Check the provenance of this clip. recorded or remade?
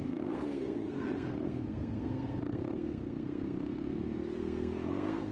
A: remade